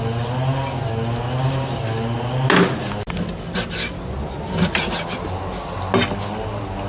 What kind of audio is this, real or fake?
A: real